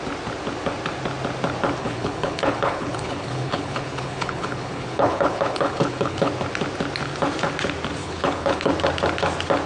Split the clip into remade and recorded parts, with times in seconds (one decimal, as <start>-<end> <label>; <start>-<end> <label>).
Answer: 0.0-1.8 recorded; 1.8-6.3 remade; 6.3-8.0 recorded; 8.0-8.7 remade; 8.7-9.7 recorded